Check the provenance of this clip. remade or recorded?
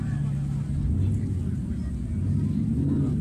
recorded